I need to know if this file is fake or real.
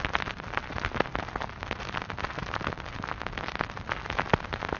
real